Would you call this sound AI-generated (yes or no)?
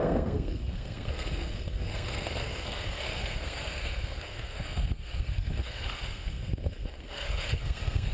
yes